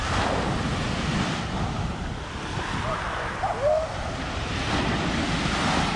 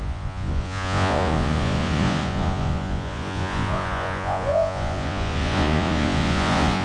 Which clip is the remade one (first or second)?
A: second